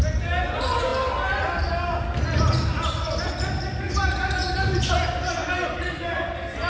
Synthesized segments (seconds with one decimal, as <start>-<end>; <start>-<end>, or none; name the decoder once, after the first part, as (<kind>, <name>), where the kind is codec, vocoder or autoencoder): none